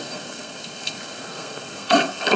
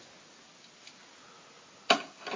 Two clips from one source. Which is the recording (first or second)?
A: second